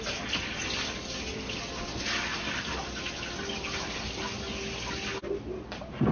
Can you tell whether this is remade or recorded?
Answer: recorded